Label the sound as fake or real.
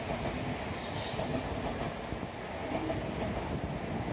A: real